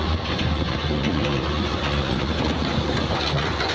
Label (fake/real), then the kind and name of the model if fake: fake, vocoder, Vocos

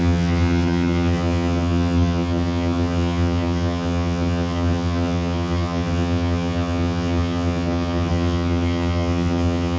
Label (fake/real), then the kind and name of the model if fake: fake, vocoder, HiFi-GAN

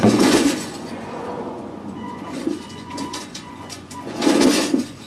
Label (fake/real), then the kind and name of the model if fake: fake, vocoder, Vocos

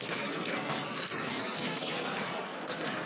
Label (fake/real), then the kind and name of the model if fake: fake, codec, SNAC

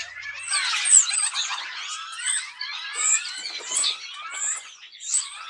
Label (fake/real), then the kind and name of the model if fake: fake, vocoder, Vocos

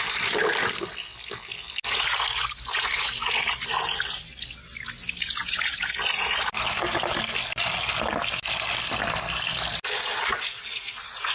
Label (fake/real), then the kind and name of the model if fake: real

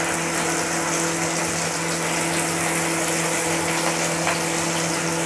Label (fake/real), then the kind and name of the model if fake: real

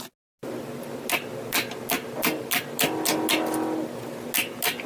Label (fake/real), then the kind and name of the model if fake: real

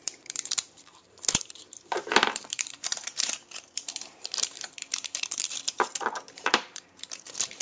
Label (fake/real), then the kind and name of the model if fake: fake, vocoder, BigVGAN v2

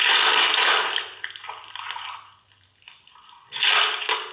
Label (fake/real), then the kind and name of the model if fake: real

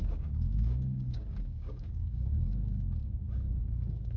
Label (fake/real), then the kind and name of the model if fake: fake, codec, DAC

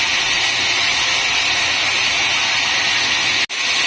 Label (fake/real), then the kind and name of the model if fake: real